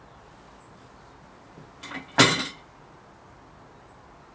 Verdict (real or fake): real